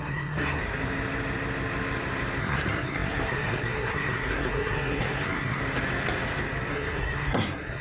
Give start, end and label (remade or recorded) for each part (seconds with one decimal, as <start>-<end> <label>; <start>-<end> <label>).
0.0-0.6 remade; 0.6-2.4 recorded; 2.4-5.6 remade; 5.6-6.7 recorded; 6.7-7.8 remade